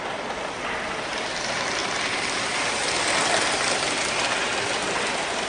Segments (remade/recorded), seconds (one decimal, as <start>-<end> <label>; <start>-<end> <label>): 0.0-5.5 recorded